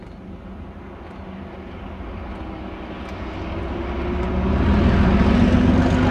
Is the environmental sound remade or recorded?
recorded